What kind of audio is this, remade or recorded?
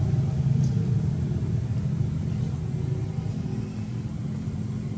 recorded